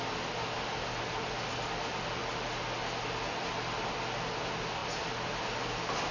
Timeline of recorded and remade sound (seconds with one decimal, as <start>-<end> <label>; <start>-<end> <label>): 0.0-6.1 recorded